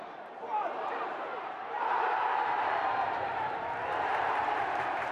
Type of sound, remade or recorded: remade